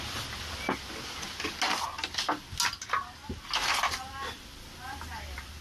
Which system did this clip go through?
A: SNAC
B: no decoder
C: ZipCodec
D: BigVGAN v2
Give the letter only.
B